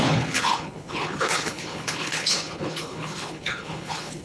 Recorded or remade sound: remade